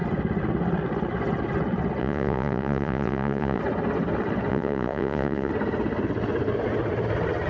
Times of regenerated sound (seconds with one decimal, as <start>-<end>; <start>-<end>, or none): 2.0-3.6; 4.5-5.5